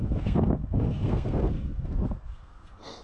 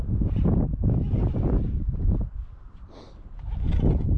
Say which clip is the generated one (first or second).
first